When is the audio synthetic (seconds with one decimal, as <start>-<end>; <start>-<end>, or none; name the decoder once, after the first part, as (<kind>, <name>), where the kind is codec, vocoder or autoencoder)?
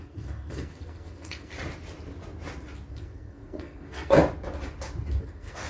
0.0-1.5 (codec, SNAC); 2.9-4.2; 5.2-5.7